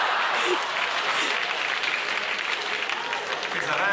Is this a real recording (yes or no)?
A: yes